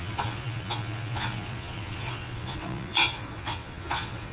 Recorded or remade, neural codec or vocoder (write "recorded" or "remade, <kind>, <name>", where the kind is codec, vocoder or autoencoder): remade, vocoder, Vocos